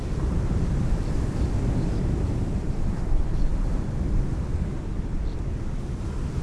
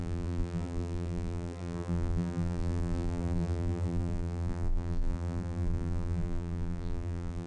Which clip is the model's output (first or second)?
second